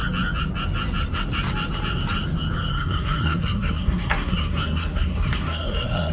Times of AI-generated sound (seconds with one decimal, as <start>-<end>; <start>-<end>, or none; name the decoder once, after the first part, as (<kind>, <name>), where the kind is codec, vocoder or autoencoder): 2.7-6.1 (codec, SNAC)